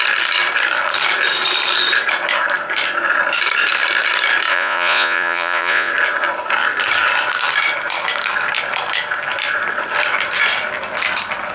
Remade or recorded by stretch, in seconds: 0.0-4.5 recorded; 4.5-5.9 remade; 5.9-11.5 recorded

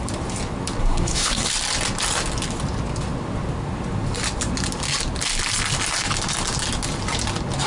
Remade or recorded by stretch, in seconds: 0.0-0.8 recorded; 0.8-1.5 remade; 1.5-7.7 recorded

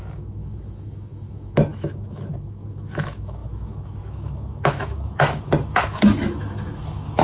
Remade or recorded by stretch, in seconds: 0.0-7.2 remade

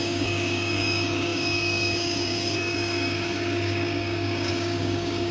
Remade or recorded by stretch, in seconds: 0.0-5.3 remade